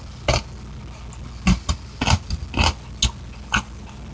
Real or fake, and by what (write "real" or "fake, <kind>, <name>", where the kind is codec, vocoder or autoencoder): real